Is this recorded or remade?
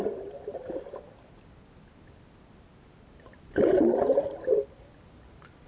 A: recorded